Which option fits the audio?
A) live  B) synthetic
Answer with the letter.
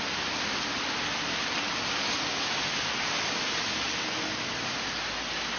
A